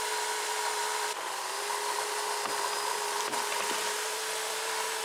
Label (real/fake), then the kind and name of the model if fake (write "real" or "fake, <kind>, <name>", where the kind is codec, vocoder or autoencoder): fake, vocoder, BigVGAN v2